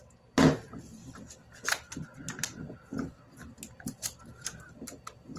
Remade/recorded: recorded